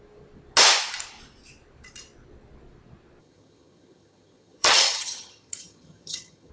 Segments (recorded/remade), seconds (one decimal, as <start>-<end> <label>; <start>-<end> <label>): 0.0-3.2 recorded; 3.2-6.5 remade